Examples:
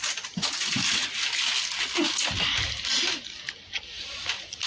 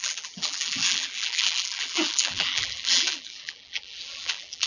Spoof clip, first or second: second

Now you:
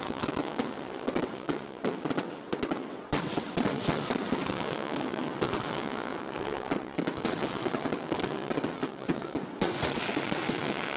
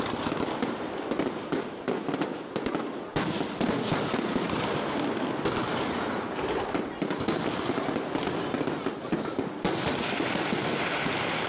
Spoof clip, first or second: first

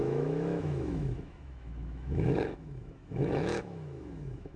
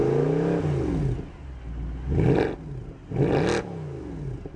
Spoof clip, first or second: first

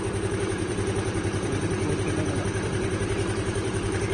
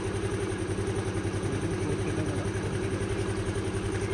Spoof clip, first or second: first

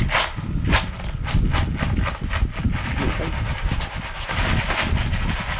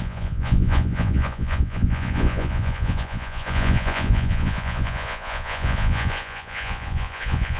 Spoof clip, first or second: second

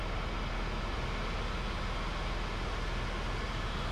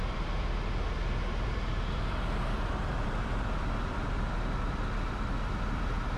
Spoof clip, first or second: second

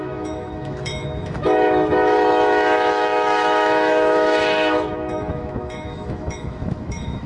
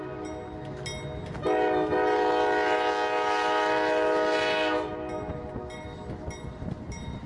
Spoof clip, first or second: first